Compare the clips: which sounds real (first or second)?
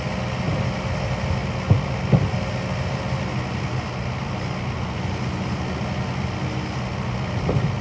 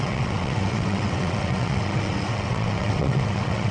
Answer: first